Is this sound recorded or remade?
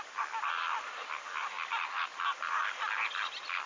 recorded